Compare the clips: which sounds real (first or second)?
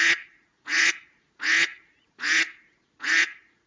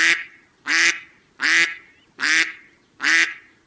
second